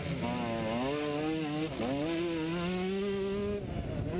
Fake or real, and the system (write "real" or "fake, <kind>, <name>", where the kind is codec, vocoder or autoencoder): real